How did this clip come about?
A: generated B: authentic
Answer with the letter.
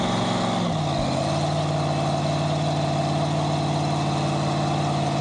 B